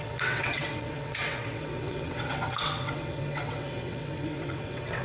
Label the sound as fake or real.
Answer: fake